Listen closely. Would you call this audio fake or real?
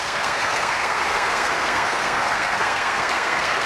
fake